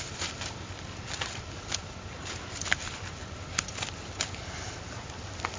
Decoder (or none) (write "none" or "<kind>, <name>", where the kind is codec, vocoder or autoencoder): none